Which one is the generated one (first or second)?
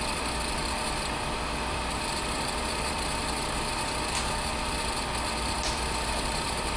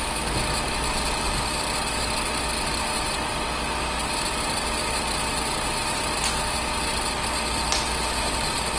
first